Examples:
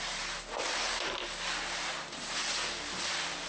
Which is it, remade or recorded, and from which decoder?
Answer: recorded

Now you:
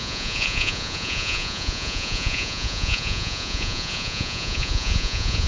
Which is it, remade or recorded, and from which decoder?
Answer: remade, vocoder, Vocos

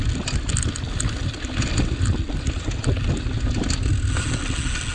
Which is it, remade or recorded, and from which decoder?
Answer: recorded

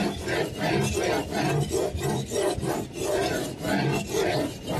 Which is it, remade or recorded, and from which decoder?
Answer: recorded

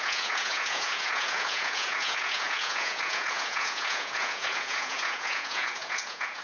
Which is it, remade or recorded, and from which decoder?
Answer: remade, vocoder, Vocos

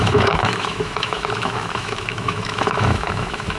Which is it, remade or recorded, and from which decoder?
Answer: remade, autoencoder, DAC-VAE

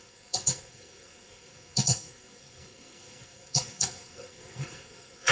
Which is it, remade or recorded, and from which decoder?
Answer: remade, codec, SNAC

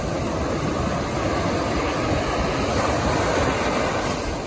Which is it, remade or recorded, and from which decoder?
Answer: recorded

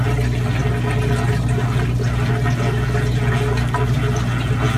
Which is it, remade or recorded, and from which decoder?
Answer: recorded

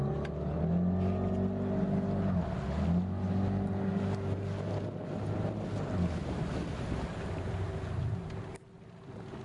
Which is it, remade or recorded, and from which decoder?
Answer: recorded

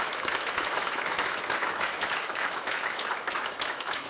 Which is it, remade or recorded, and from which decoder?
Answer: remade, autoencoder, DAC-VAE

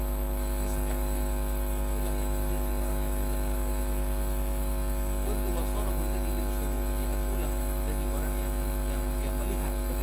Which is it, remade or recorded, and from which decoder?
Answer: remade, autoencoder, DAC-VAE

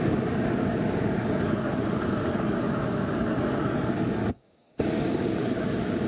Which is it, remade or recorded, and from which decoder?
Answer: remade, codec, DAC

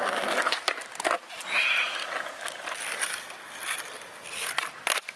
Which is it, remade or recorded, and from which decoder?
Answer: recorded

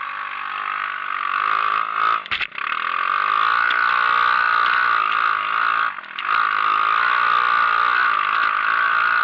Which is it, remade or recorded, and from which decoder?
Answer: recorded